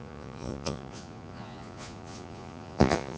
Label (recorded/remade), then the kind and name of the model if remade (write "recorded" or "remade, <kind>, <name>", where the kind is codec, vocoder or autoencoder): remade, vocoder, Vocos